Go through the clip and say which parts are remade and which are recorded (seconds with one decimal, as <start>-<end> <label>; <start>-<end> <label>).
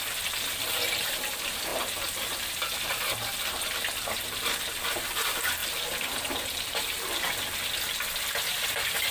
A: 0.0-9.1 recorded